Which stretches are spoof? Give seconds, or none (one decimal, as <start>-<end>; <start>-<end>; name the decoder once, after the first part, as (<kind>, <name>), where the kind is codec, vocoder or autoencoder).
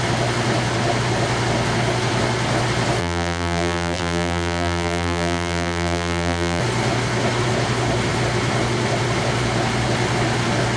3.0-6.6 (vocoder, BigVGAN v2)